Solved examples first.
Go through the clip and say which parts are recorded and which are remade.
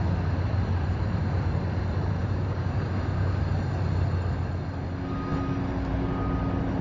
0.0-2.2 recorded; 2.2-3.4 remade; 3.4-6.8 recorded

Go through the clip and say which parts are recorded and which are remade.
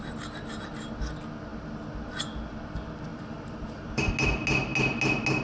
0.0-3.1 recorded; 3.1-4.1 remade; 4.1-5.4 recorded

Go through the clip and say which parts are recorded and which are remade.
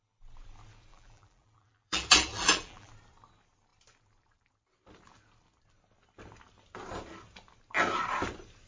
0.0-0.9 recorded; 0.9-2.9 remade; 2.9-8.7 recorded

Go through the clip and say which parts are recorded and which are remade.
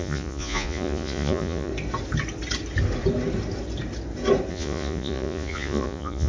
0.0-1.7 remade; 1.7-4.5 recorded; 4.5-6.3 remade